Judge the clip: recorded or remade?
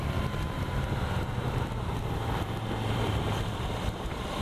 remade